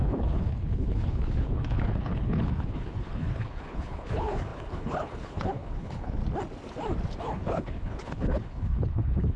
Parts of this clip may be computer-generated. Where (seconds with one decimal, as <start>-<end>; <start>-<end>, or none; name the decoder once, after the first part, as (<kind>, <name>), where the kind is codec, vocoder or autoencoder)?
0.0-6.2 (codec, HILCodec); 7.2-9.4